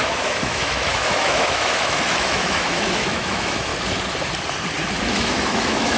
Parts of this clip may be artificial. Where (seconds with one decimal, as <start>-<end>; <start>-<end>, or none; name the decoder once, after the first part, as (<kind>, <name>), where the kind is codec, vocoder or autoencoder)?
0.0-3.7 (autoencoder, DAC-VAE); 5.1-6.0